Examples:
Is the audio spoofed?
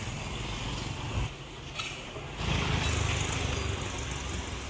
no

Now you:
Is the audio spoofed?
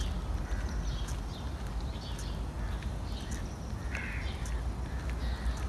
no